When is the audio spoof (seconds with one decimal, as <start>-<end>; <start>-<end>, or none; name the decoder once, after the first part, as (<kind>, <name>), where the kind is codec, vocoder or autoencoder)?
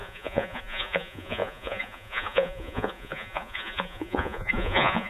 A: 0.0-5.1 (vocoder, Vocos)